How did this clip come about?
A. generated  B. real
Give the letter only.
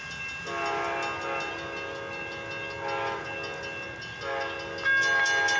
B